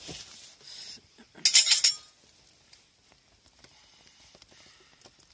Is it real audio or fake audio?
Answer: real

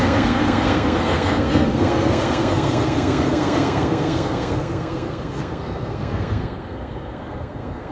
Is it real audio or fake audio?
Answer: fake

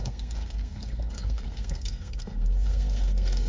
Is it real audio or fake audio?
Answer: fake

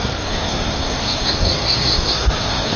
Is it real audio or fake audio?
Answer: fake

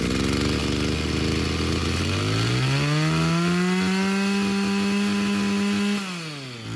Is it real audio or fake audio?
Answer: real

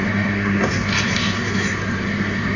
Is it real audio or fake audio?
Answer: fake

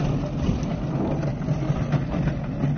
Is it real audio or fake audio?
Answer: real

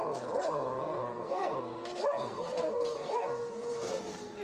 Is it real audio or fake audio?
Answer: fake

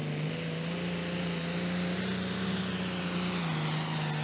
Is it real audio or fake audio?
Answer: real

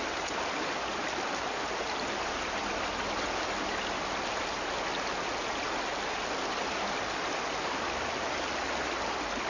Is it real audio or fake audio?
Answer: real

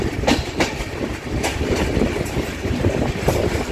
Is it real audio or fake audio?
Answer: real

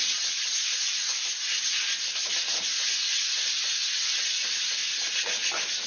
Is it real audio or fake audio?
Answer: real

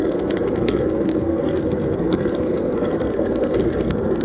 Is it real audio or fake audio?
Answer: fake